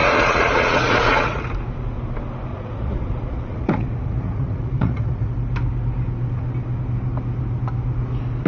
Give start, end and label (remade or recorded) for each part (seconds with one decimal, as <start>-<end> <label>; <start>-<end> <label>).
0.0-1.4 remade; 1.4-2.5 recorded; 2.5-5.3 remade; 5.3-8.5 recorded